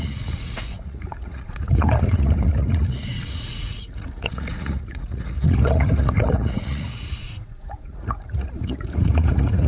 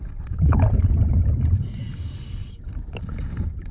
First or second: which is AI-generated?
first